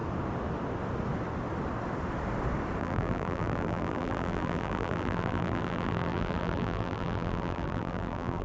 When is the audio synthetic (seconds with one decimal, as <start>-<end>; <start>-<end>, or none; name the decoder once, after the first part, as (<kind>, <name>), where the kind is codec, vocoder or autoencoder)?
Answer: 2.8-8.4 (vocoder, BigVGAN v2)